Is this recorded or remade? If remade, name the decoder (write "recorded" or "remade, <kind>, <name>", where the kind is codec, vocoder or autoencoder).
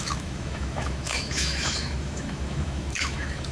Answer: remade, autoencoder, DAC-VAE